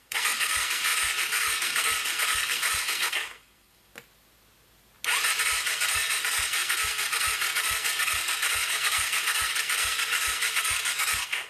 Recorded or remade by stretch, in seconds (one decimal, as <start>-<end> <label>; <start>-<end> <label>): 0.0-3.9 remade; 3.9-5.4 recorded; 5.4-11.5 remade